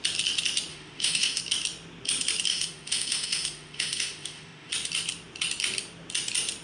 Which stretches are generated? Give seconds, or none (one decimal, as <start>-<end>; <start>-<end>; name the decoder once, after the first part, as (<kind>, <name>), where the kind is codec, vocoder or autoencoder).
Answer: 0.7-1.4 (autoencoder, DAC-VAE); 2.5-4.7